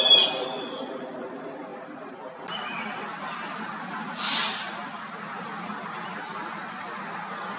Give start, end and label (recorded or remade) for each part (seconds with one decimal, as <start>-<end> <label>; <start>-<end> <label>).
0.0-7.6 recorded

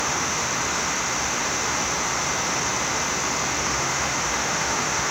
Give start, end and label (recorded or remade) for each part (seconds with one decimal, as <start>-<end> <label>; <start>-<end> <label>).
0.0-0.5 remade; 0.5-3.6 recorded; 3.6-5.1 remade

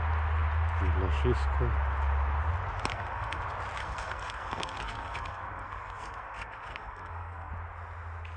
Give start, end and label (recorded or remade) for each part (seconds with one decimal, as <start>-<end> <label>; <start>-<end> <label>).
0.0-2.9 recorded; 2.9-3.4 remade; 3.4-3.8 recorded; 3.8-7.5 remade; 7.5-8.4 recorded

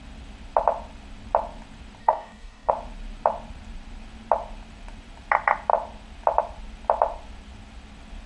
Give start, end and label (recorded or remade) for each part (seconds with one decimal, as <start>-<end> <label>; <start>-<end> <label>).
0.0-2.0 recorded; 2.0-2.7 remade; 2.7-8.3 recorded

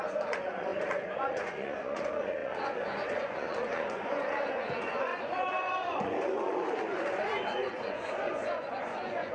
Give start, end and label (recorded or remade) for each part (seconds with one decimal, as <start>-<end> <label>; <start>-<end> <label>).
0.0-9.3 remade

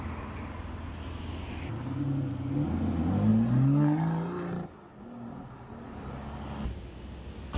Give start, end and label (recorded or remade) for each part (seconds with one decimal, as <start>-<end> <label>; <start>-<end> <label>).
0.0-7.6 recorded

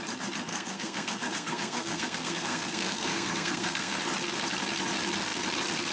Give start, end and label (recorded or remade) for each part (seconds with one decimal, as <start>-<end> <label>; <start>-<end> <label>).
0.0-0.5 recorded; 0.5-4.0 remade; 4.0-5.9 recorded